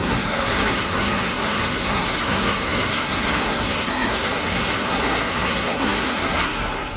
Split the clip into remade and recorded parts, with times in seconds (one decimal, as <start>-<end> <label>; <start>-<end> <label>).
0.0-7.0 remade